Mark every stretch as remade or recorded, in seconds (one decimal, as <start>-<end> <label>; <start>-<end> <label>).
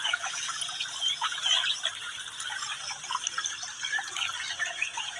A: 0.0-1.6 remade; 1.6-4.7 recorded; 4.7-5.2 remade